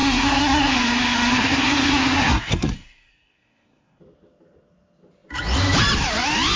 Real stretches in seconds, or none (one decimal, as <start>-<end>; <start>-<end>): 4.0-6.6

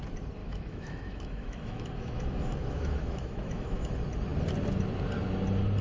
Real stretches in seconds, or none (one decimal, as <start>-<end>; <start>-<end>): 0.0-0.4; 3.9-5.8

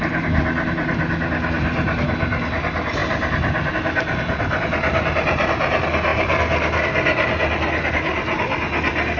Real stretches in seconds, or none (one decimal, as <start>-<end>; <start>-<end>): 0.0-9.2

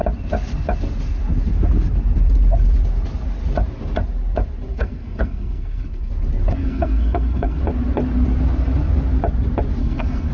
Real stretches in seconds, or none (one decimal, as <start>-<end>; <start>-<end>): 0.0-4.7; 6.1-6.6; 7.6-9.8

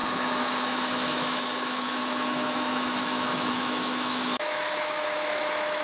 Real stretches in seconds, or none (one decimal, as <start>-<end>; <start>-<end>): none

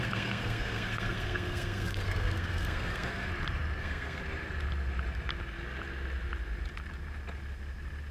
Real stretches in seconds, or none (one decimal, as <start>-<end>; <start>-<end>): 3.3-3.8; 4.2-8.1

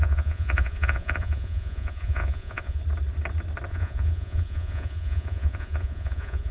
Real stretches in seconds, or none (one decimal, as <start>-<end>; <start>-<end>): 2.8-3.7

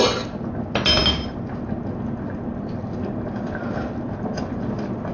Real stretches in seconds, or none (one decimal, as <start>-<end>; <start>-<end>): 0.0-5.1